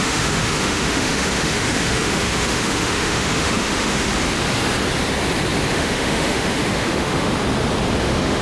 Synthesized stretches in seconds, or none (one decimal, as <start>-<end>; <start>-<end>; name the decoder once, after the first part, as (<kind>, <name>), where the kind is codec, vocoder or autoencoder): 0.0-4.1 (autoencoder, DAC-VAE); 5.7-7.3; 8.0-8.4